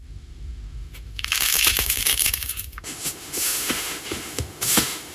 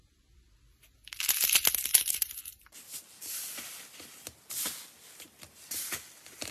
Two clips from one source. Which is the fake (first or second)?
first